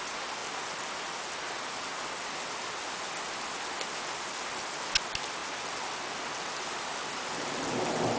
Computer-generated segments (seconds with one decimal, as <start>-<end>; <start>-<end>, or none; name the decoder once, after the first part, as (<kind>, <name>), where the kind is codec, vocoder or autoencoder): none